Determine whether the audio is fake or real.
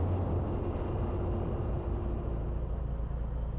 real